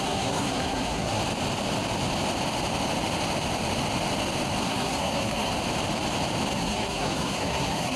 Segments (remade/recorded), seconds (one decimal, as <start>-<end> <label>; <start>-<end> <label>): 0.0-1.2 remade; 1.2-4.6 recorded; 4.6-5.5 remade; 5.5-6.5 recorded; 6.5-8.0 remade